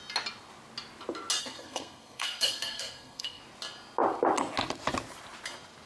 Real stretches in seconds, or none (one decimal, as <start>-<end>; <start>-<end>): 0.0-1.4; 3.4-5.9